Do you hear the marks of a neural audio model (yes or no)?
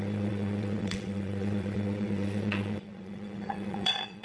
yes